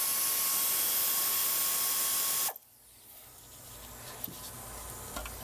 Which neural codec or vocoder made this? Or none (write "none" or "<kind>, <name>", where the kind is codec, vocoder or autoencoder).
none